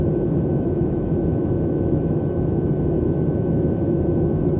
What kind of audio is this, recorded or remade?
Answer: remade